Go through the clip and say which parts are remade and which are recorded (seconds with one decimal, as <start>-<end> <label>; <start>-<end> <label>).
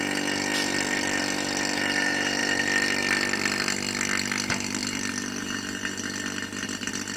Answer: 0.0-7.2 recorded